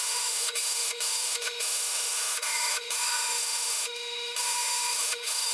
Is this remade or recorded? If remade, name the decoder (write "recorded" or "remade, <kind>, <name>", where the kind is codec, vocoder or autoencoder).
remade, autoencoder, DAC-VAE